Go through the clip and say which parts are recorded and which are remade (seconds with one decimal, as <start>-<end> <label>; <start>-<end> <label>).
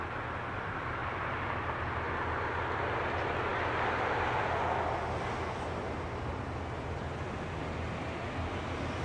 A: 0.0-9.0 recorded